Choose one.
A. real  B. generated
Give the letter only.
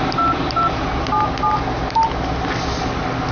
A